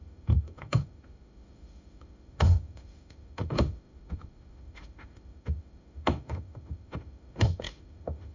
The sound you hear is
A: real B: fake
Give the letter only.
B